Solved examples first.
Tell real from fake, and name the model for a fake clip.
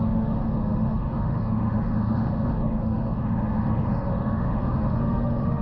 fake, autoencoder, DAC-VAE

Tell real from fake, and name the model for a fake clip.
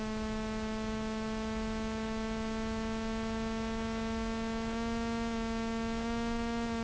real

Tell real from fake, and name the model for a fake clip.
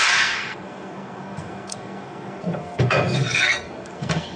fake, codec, SNAC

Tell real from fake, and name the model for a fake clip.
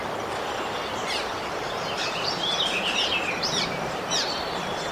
fake, vocoder, BigVGAN v2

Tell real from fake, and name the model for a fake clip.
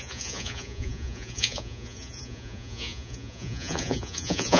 fake, vocoder, Vocos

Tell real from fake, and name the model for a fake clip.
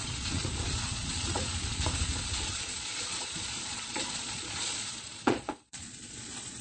fake, vocoder, Vocos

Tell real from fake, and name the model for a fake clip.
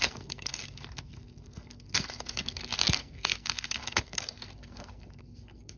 fake, codec, SNAC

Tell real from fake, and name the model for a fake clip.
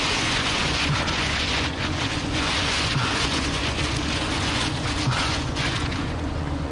fake, vocoder, Vocos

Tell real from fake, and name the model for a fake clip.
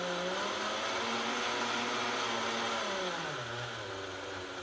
real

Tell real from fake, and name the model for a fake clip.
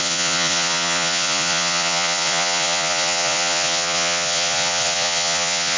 fake, vocoder, Vocos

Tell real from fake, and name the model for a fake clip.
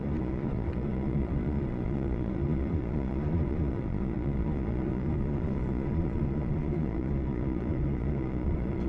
fake, vocoder, Vocos